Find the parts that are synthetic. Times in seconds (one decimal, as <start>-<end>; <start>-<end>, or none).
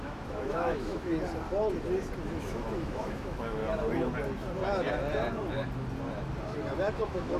0.0-1.1; 2.4-3.6; 6.9-7.4